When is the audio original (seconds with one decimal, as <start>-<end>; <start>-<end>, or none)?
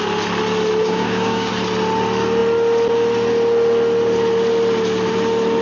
0.0-0.8; 1.5-5.6